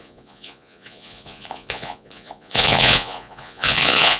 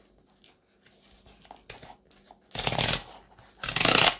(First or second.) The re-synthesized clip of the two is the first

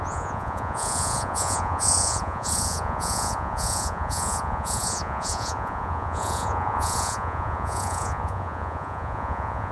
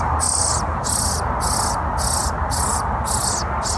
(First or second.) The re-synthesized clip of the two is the first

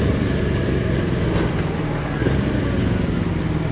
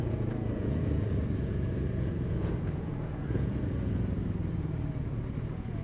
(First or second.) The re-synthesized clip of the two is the second